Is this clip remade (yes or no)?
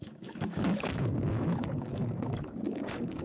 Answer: yes